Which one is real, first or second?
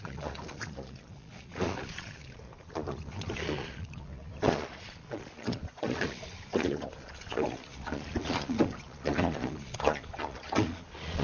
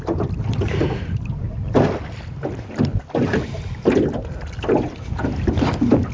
second